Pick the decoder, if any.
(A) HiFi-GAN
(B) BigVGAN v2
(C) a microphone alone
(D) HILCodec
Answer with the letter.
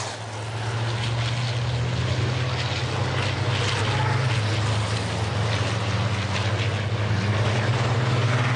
C